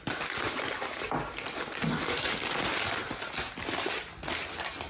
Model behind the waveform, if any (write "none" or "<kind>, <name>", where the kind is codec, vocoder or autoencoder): none